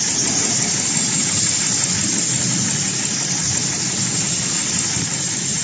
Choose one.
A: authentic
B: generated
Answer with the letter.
B